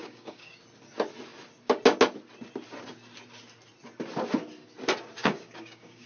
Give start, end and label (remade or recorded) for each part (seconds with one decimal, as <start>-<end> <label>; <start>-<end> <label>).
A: 0.0-0.6 remade; 0.6-5.2 recorded; 5.2-6.1 remade